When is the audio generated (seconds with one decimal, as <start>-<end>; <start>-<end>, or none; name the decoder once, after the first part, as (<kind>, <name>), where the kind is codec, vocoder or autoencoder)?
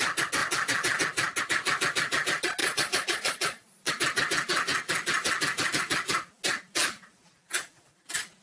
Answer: 2.6-3.9 (vocoder, Vocos)